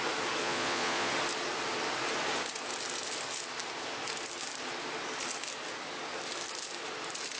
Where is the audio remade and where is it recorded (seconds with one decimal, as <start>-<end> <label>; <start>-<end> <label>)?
0.0-0.4 recorded; 0.4-1.1 remade; 1.1-7.4 recorded